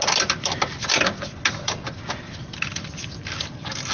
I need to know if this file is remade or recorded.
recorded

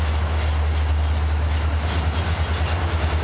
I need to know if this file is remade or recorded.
recorded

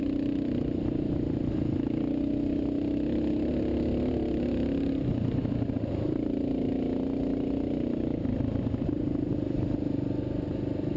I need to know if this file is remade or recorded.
recorded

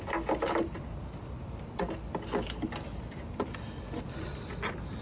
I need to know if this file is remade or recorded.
recorded